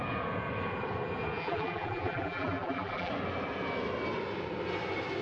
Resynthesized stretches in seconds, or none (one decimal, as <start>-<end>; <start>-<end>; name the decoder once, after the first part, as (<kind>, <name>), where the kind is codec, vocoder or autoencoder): 1.4-3.1 (vocoder, BigVGAN v2)